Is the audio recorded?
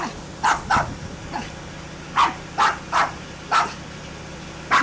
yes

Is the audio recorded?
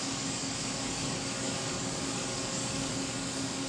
no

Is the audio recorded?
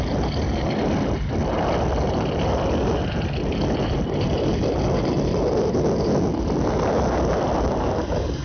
yes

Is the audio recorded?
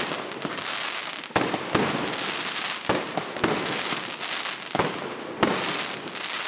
yes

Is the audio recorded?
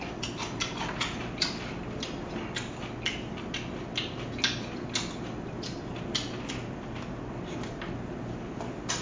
yes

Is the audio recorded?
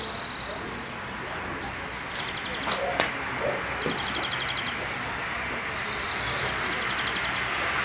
yes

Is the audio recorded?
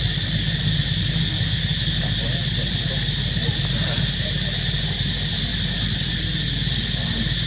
yes